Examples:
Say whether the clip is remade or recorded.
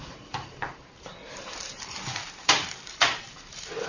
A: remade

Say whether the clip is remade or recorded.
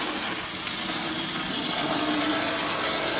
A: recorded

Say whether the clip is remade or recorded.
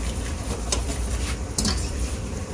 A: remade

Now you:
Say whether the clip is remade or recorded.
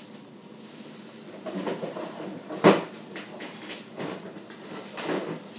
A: recorded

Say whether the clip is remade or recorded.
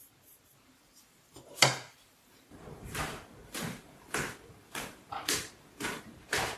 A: remade